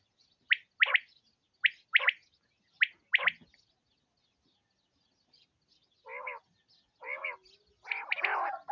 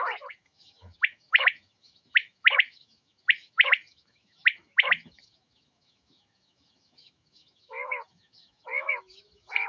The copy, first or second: second